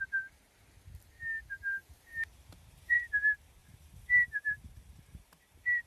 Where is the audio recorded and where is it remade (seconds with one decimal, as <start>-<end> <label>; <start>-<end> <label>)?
0.0-1.8 recorded; 1.8-3.1 remade; 3.1-3.6 recorded; 3.6-5.9 remade